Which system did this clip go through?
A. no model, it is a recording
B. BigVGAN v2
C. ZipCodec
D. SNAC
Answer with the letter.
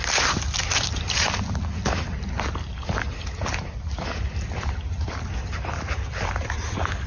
A